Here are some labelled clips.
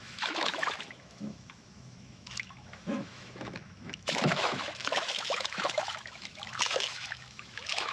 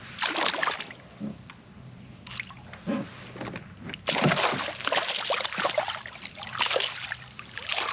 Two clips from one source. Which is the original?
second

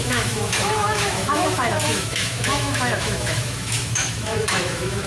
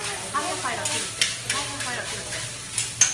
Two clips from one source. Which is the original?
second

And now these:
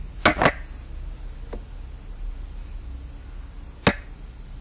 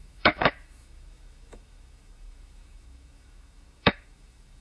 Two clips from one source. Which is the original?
first